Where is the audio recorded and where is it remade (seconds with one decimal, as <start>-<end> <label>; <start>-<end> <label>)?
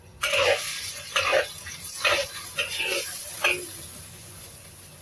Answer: 0.0-1.3 remade; 1.3-2.1 recorded; 2.1-3.2 remade; 3.2-4.0 recorded; 4.0-5.0 remade